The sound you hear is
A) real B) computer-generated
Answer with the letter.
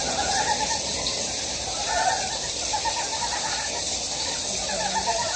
A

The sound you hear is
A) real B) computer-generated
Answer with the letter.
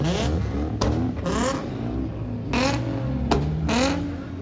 A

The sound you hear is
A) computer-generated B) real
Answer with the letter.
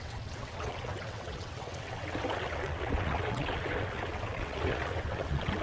A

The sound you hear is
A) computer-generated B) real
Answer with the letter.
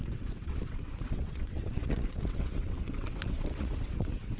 A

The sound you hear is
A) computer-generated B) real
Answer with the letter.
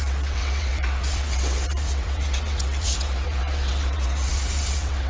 A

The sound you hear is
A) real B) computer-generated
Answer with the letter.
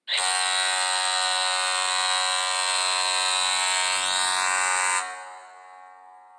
A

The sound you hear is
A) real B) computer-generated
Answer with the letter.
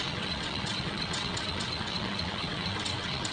B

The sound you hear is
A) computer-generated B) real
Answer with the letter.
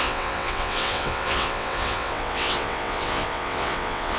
A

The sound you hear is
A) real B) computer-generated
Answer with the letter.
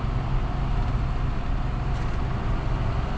A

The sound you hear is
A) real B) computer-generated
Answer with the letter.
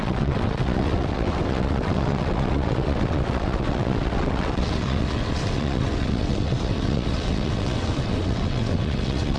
B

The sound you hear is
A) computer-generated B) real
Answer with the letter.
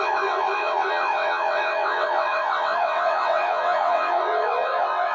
A